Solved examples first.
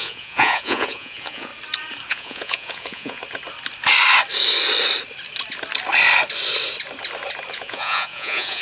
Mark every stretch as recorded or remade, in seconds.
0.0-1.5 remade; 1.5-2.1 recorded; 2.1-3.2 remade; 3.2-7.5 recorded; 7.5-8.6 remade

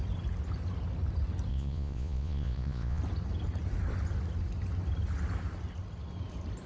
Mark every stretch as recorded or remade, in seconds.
0.0-1.5 recorded; 1.5-3.0 remade; 3.0-6.7 recorded

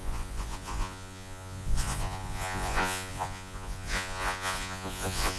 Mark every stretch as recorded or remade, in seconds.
0.0-5.4 remade

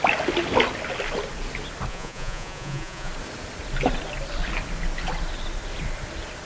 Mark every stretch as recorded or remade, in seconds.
0.0-1.9 recorded; 1.9-3.1 remade; 3.1-6.5 recorded

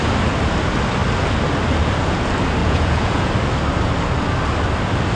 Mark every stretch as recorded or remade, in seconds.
0.0-2.6 recorded; 2.6-3.3 remade; 3.3-5.2 recorded

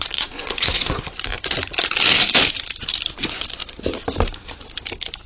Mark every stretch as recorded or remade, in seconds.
0.0-1.3 remade; 1.3-3.1 recorded; 3.1-3.6 remade; 3.6-5.3 recorded

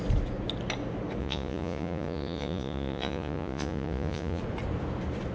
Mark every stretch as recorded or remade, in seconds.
0.0-1.2 recorded; 1.2-4.4 remade; 4.4-5.3 recorded

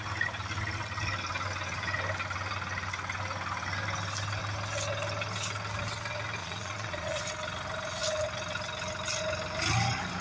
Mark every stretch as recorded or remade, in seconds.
0.0-6.4 recorded; 6.4-7.2 remade; 7.2-10.2 recorded